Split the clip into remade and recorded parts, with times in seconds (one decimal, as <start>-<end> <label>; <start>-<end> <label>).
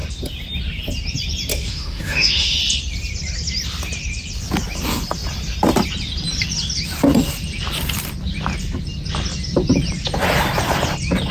0.0-1.5 recorded; 1.5-2.6 remade; 2.6-11.3 recorded